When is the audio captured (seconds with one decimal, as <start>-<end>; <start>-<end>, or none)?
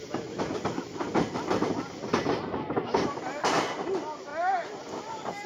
none